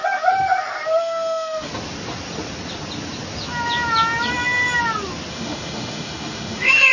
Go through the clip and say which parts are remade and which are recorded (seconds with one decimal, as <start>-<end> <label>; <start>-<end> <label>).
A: 0.0-1.0 recorded; 1.0-1.7 remade; 1.7-5.3 recorded; 5.3-6.9 remade